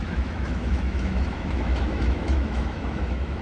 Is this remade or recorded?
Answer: remade